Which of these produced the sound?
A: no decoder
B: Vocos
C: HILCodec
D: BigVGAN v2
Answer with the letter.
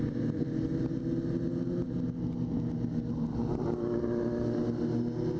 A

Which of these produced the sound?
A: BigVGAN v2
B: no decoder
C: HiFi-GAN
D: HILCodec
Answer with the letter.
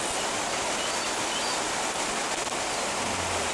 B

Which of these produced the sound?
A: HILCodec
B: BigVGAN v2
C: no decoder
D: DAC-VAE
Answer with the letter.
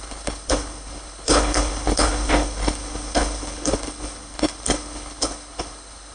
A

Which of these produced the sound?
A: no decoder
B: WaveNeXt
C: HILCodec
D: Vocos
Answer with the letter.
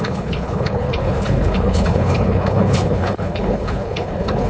C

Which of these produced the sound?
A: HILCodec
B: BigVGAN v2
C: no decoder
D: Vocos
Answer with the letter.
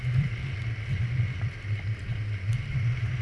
C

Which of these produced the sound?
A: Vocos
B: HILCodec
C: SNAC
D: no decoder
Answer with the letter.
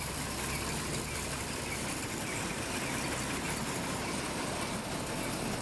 D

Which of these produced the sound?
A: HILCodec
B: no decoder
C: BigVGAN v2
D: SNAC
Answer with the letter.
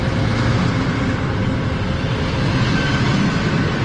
B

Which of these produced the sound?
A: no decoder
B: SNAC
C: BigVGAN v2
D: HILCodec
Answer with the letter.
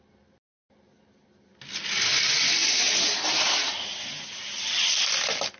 A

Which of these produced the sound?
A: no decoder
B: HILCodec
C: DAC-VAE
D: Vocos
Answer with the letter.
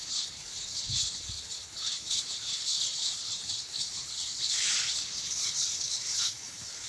B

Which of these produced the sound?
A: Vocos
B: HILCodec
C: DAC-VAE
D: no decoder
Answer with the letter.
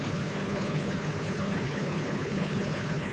B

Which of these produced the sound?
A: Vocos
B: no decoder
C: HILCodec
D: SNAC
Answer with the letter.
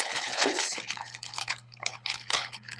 C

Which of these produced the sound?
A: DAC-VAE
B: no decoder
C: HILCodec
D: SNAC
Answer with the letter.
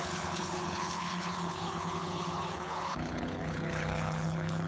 C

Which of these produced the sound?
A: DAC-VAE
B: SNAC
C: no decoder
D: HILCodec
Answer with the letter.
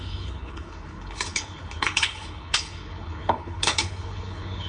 D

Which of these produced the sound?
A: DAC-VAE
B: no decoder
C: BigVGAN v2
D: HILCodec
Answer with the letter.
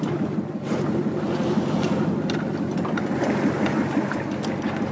B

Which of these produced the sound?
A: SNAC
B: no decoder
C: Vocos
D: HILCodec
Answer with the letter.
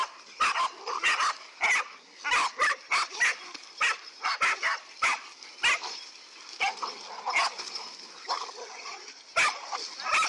B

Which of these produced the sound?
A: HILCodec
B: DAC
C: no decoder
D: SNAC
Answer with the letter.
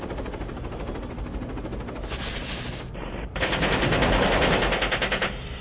C